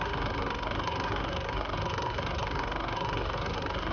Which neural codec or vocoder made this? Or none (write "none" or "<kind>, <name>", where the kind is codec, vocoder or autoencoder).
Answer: codec, SNAC